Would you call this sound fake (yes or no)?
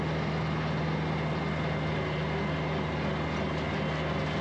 no